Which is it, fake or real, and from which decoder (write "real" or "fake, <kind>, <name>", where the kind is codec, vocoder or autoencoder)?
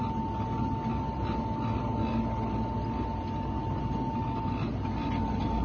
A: real